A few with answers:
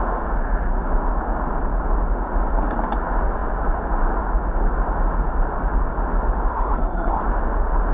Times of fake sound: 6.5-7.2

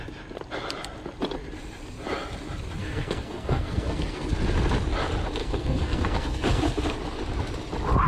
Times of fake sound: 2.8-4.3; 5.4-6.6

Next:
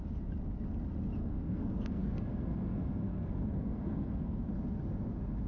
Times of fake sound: 1.2-4.5

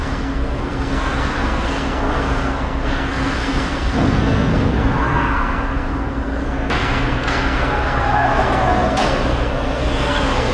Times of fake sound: 0.0-10.5

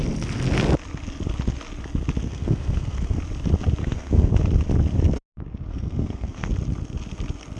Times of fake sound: 2.2-3.2; 3.8-4.3; 5.7-6.5